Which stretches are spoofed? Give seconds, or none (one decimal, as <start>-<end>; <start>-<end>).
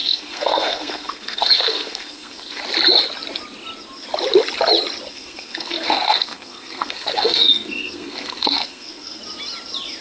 0.0-2.6; 5.1-9.2